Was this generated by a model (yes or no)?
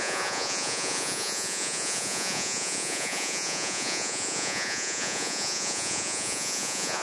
yes